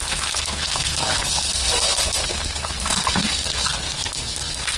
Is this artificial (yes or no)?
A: yes